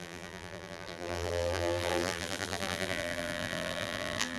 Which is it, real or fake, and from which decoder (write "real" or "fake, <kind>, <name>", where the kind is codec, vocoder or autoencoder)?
fake, vocoder, BigVGAN v2